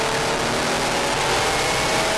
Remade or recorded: recorded